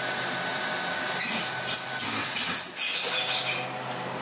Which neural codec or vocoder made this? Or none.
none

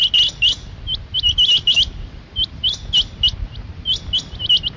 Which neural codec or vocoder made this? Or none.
none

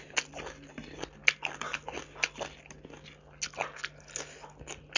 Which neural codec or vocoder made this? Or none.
none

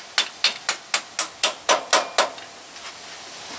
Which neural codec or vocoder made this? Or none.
none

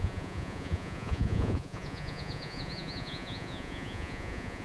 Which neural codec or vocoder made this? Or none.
vocoder, Vocos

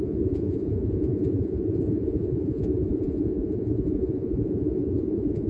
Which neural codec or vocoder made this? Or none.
vocoder, Vocos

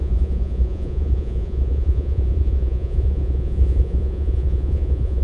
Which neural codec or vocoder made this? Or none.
vocoder, Vocos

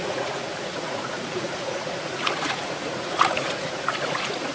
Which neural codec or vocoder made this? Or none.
vocoder, Vocos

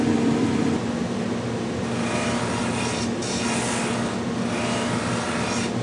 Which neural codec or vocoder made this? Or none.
none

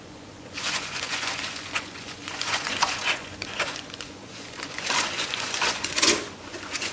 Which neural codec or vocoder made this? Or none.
vocoder, Vocos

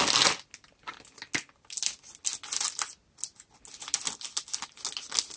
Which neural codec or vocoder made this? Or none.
none